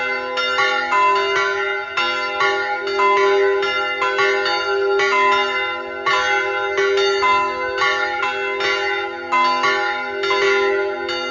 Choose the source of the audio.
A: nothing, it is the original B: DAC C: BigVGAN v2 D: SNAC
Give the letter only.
A